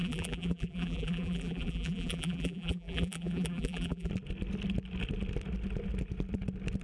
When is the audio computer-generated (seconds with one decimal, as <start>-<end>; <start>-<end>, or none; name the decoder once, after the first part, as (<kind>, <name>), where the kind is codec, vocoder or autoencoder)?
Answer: 0.0-4.1 (vocoder, BigVGAN v2)